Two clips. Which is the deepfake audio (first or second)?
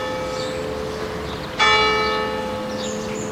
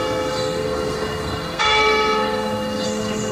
second